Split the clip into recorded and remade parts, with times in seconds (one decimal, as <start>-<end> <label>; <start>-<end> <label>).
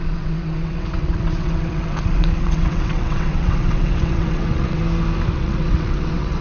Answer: 0.0-4.8 remade; 4.8-5.3 recorded; 5.3-6.4 remade